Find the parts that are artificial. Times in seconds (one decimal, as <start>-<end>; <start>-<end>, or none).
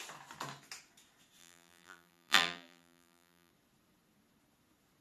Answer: 1.4-3.5